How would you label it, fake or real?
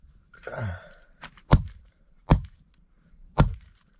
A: fake